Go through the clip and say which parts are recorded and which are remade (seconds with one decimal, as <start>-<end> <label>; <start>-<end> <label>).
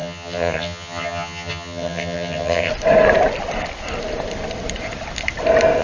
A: 0.0-2.7 remade; 2.7-5.8 recorded